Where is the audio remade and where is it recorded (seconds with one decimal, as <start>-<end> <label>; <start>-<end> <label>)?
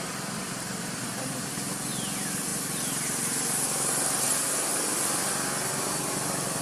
0.0-6.6 recorded